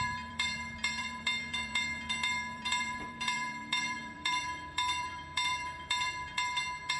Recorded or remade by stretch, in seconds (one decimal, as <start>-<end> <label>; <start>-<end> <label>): 0.0-7.0 remade